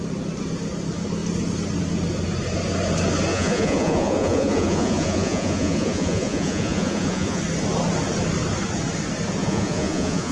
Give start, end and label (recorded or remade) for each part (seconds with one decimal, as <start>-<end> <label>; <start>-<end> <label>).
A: 0.0-3.3 recorded; 3.3-7.4 remade; 7.4-9.4 recorded; 9.4-10.3 remade

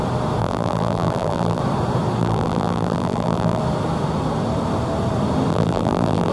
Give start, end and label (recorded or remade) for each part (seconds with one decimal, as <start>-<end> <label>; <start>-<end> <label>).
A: 0.0-0.4 recorded; 0.4-1.6 remade; 1.6-2.2 recorded; 2.2-3.6 remade; 3.6-5.5 recorded; 5.5-6.3 remade

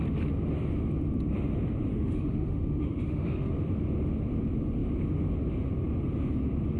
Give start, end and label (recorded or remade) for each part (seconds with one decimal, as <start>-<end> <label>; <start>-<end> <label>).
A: 0.0-1.9 recorded; 1.9-3.5 remade; 3.5-6.8 recorded

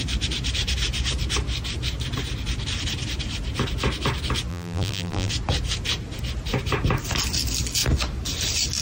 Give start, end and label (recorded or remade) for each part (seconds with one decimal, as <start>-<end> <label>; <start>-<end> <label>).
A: 0.0-4.5 recorded; 4.5-5.3 remade; 5.3-8.8 recorded

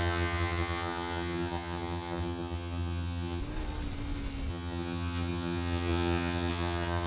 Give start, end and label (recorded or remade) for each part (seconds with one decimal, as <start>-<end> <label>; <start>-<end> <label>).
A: 0.0-3.4 remade; 3.4-4.5 recorded; 4.5-7.1 remade